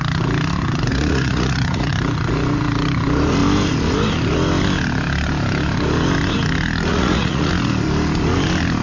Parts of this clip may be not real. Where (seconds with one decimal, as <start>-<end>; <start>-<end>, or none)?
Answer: 0.9-1.9; 6.9-7.5